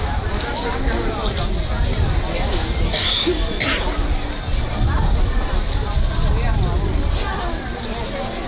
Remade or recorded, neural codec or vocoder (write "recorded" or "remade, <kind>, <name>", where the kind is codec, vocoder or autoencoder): recorded